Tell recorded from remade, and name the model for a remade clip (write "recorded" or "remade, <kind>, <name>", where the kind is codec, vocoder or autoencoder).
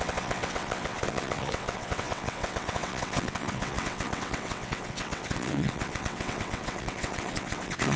remade, vocoder, WaveNeXt